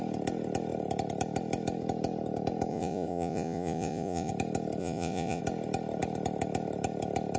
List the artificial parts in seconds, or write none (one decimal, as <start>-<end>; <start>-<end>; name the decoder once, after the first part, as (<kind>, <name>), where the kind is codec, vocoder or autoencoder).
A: 2.7-4.3 (vocoder, Vocos); 4.8-5.4